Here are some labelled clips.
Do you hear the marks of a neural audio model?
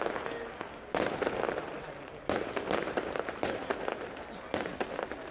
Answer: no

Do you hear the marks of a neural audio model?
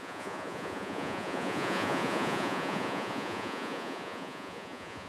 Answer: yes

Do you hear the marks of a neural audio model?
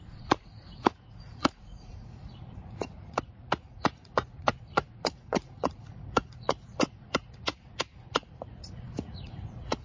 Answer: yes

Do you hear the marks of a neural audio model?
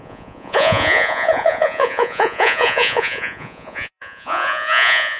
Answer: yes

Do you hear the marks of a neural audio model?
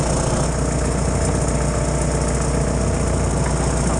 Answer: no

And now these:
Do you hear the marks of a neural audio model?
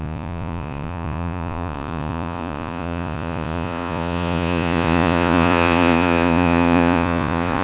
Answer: yes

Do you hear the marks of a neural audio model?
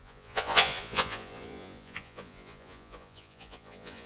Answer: yes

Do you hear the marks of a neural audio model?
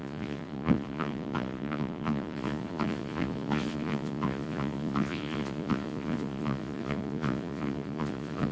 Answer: yes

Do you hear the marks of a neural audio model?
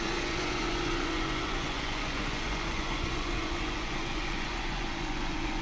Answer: yes